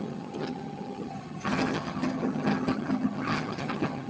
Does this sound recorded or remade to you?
remade